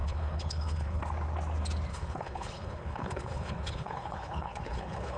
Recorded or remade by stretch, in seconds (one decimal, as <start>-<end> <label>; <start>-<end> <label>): 0.0-1.0 remade; 1.0-1.9 recorded; 1.9-5.2 remade